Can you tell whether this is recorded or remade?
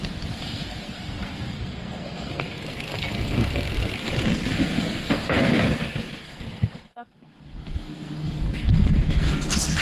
remade